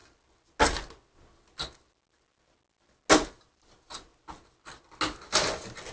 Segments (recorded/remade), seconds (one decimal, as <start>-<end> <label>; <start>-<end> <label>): 0.0-5.9 recorded